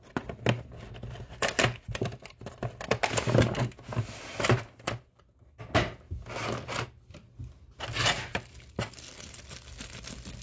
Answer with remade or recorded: recorded